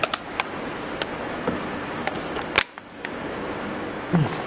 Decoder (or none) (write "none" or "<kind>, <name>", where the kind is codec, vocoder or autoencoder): none